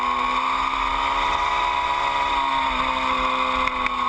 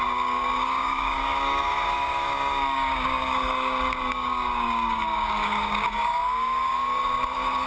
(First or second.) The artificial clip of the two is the second